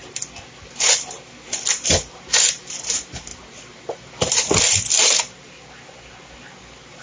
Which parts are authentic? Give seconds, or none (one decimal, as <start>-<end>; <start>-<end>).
0.0-7.0